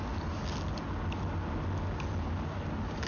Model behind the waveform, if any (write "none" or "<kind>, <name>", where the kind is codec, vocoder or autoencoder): none